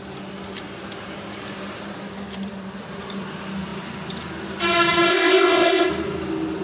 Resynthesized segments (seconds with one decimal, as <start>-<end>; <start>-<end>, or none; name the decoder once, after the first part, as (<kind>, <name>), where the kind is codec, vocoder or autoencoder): 5.1-5.9 (codec, ZipCodec)